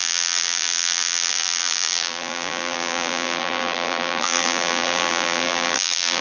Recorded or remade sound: remade